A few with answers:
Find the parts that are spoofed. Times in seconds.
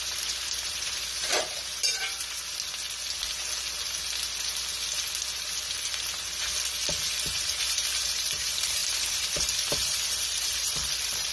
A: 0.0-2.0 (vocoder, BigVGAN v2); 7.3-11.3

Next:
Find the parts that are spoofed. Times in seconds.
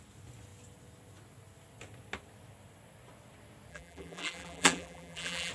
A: 3.7-5.5 (vocoder, BigVGAN v2)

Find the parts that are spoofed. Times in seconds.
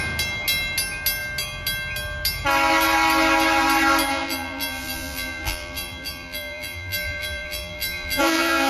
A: 4.1-8.7 (vocoder, BigVGAN v2)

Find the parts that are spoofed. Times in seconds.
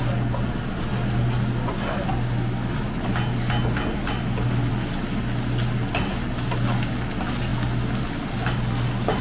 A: none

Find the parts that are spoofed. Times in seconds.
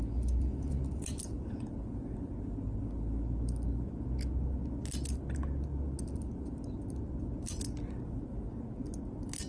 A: 0.4-2.3 (vocoder, BigVGAN v2)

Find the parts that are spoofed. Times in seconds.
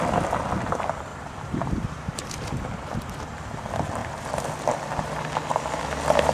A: 1.1-3.4 (vocoder, BigVGAN v2)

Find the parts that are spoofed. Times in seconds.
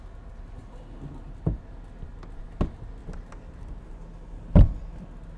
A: 3.0-4.1 (vocoder, BigVGAN v2)